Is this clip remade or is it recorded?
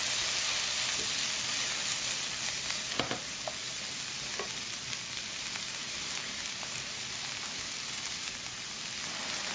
recorded